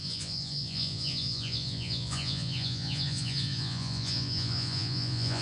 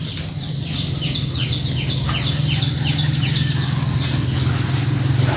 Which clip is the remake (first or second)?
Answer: first